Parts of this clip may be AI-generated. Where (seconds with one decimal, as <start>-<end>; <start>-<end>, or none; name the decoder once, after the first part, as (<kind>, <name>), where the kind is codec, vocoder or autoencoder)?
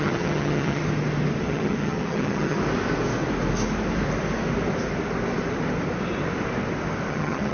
0.0-0.8 (vocoder, HiFi-GAN); 1.4-2.6; 7.1-7.5